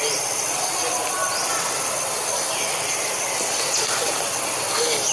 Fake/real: real